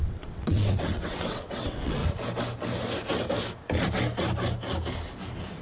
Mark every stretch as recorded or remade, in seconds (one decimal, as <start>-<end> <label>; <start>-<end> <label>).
0.0-2.0 remade; 2.0-5.6 recorded